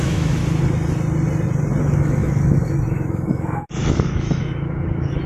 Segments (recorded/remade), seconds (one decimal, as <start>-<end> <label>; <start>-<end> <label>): 0.0-0.4 remade; 0.4-1.8 recorded; 1.8-5.3 remade